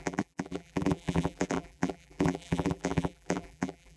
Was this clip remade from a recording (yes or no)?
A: yes